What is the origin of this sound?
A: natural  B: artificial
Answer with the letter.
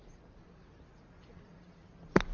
A